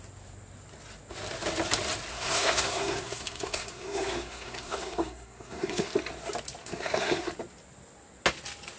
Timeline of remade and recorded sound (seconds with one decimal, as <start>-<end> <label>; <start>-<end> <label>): 0.0-2.1 recorded; 2.1-5.9 remade; 5.9-6.6 recorded; 6.6-7.3 remade; 7.3-8.8 recorded